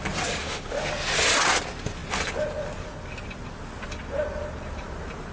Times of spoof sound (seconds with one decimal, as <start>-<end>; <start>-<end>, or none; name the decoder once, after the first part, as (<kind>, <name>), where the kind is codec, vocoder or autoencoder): 0.4-0.9 (autoencoder, DAC-VAE)